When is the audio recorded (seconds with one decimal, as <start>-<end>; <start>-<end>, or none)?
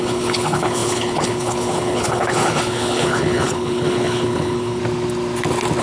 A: 4.8-5.8